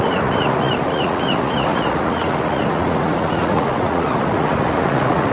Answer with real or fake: fake